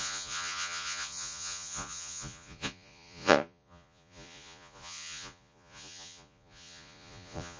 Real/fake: fake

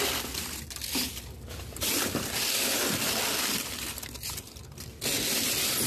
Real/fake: real